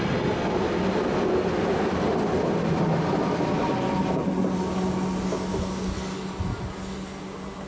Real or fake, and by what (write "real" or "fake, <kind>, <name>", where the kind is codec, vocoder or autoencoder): real